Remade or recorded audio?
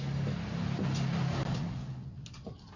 recorded